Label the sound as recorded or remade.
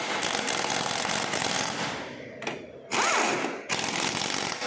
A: recorded